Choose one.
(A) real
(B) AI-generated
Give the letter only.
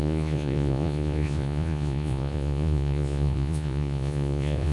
B